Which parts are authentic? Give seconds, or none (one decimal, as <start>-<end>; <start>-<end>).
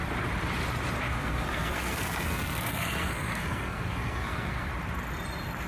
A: 0.0-1.2; 4.7-5.7